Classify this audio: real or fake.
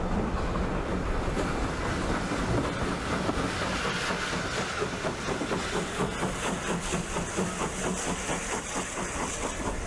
real